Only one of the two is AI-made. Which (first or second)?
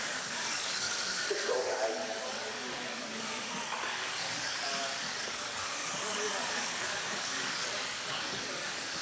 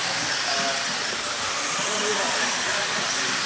first